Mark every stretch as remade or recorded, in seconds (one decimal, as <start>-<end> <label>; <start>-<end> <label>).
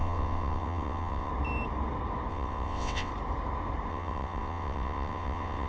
0.0-1.3 remade; 1.3-2.3 recorded; 2.3-3.1 remade; 3.1-3.9 recorded; 3.9-5.7 remade